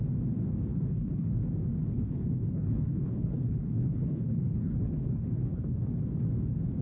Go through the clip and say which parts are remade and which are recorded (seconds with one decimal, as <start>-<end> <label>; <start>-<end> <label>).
0.0-0.7 recorded; 0.7-1.4 remade; 1.4-1.9 recorded; 1.9-5.9 remade; 5.9-6.8 recorded